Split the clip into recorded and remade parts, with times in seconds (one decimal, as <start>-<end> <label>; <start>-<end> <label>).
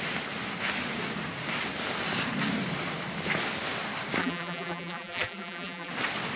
0.0-4.2 recorded; 4.2-5.9 remade; 5.9-6.4 recorded